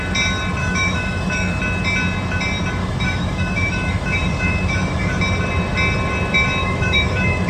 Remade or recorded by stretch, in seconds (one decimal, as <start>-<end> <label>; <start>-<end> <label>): 0.0-0.6 recorded; 0.6-1.6 remade; 1.6-2.8 recorded; 2.8-5.2 remade; 5.2-6.6 recorded; 6.6-7.5 remade